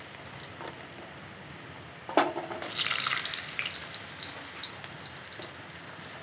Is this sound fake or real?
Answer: real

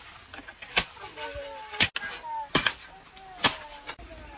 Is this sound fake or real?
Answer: real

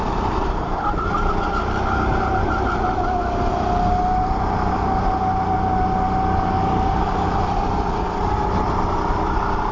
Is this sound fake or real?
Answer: real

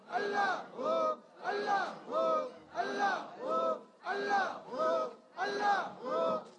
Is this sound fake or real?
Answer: real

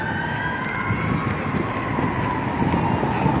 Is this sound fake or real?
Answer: real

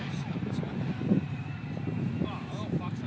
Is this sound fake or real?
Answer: fake